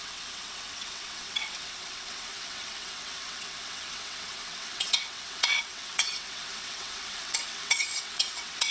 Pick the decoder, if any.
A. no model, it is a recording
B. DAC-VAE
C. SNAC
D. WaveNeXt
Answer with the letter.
D